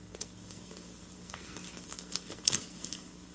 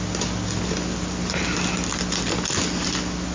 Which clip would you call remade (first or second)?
first